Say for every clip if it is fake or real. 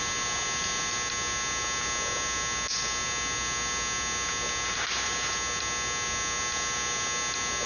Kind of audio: real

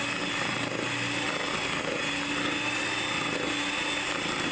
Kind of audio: real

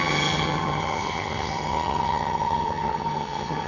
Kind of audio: fake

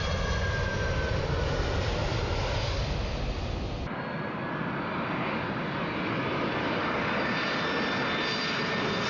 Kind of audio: real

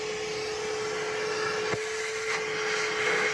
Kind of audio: real